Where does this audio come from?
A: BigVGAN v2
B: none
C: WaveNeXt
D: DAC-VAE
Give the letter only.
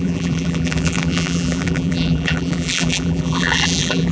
A